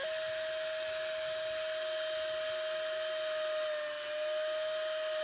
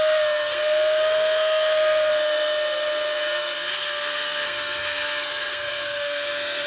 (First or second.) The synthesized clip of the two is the second